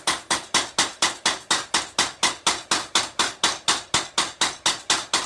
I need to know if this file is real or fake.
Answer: real